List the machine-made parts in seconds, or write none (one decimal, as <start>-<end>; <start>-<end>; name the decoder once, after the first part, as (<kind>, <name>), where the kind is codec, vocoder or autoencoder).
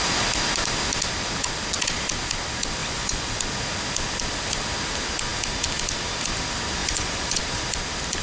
2.8-3.4 (vocoder, Vocos); 6.8-7.4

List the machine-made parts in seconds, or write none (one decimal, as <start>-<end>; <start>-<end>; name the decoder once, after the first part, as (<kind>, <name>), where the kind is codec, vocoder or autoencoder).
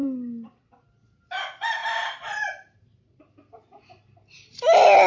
none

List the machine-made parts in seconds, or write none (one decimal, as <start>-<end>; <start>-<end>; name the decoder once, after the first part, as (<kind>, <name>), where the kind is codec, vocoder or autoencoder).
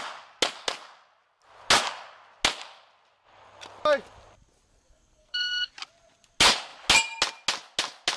4.7-5.7 (codec, SNAC)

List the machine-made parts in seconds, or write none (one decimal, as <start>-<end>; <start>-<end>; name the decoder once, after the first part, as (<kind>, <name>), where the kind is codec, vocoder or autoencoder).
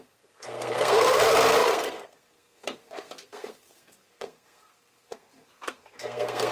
0.0-6.5 (codec, SNAC)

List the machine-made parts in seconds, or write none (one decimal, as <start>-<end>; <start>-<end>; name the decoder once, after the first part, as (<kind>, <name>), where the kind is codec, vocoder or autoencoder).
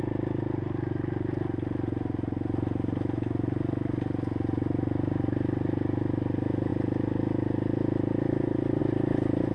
none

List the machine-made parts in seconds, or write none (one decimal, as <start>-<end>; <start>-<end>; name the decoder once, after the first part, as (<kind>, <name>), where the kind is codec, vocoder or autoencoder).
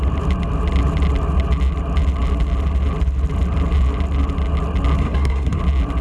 5.0-5.6 (codec, SNAC)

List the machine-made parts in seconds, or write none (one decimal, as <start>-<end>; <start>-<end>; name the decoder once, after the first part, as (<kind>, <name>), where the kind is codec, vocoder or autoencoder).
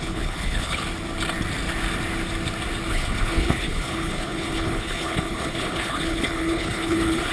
0.0-0.8 (codec, HILCodec); 2.9-7.3